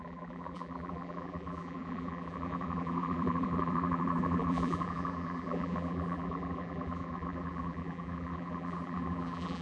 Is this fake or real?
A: fake